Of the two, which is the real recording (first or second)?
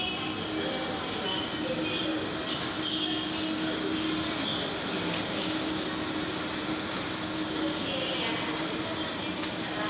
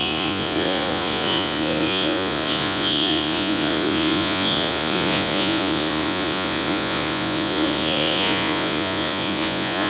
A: first